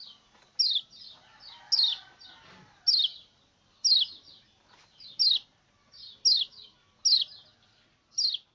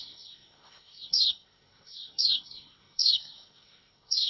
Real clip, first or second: first